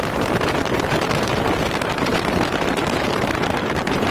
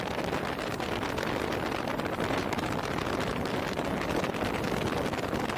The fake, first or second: first